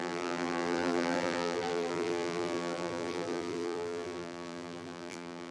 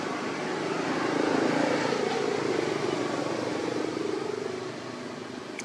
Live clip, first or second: second